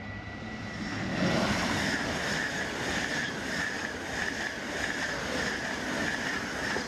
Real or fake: real